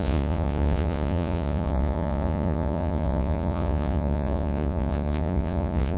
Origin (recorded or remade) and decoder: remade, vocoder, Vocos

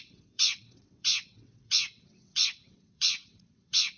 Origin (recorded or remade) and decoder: remade, vocoder, WaveNeXt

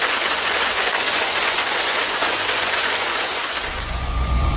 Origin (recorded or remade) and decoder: remade, vocoder, Vocos